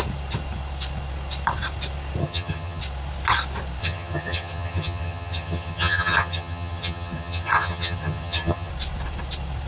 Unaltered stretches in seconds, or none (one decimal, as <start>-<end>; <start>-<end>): 0.0-2.2; 2.8-3.8; 8.7-9.7